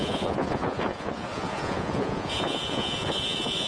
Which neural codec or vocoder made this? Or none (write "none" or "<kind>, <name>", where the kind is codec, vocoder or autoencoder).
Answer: vocoder, Vocos